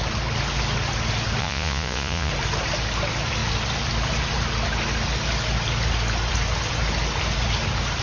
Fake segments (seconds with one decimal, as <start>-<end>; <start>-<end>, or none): 1.4-2.3